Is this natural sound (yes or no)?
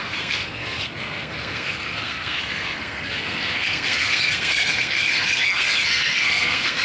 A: no